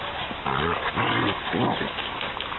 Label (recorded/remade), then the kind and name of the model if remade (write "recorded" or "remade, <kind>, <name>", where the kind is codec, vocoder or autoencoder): recorded